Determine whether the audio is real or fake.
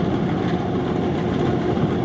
real